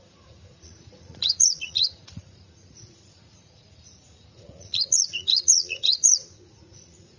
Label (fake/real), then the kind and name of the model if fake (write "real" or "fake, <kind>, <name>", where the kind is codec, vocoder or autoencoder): fake, vocoder, Vocos